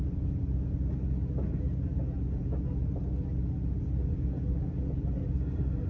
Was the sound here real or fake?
real